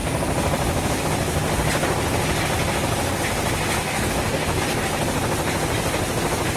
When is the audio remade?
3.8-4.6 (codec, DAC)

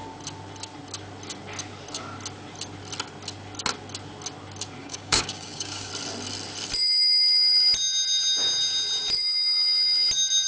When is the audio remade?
4.8-5.9 (codec, DAC)

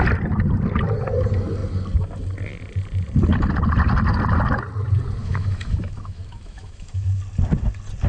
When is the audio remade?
5.2-7.2 (autoencoder, DAC-VAE)

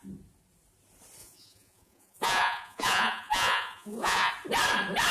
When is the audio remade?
1.2-4.3 (vocoder, Vocos)